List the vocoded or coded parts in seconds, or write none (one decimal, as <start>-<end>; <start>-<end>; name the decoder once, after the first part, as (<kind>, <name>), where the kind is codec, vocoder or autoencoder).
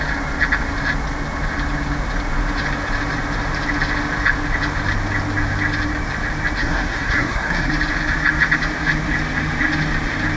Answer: 6.6-7.7 (codec, SNAC)